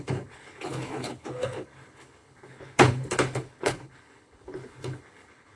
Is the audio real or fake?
fake